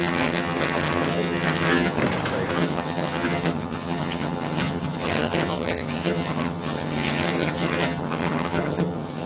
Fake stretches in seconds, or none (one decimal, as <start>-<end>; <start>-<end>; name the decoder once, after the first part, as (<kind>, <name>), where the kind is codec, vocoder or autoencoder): 0.0-2.0 (vocoder, HiFi-GAN); 2.5-9.3